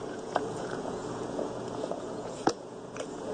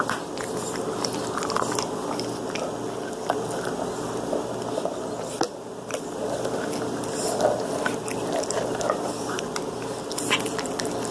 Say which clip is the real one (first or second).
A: second